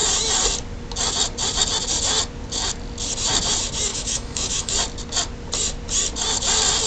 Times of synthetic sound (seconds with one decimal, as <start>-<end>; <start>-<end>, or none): 3.9-4.7